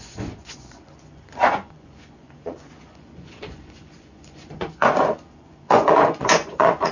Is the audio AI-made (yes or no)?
yes